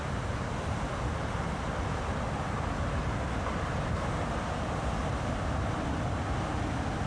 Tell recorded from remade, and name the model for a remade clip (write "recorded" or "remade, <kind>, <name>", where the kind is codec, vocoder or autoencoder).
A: recorded